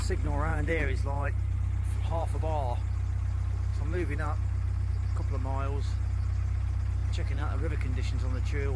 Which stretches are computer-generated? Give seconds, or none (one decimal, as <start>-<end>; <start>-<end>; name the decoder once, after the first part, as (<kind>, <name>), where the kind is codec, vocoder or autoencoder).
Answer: 0.5-2.4 (vocoder, BigVGAN v2); 3.7-4.9; 7.0-7.7